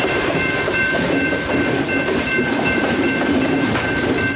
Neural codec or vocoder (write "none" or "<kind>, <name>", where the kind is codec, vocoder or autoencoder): vocoder, BigVGAN v2